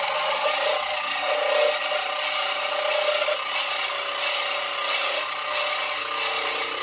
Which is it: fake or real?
real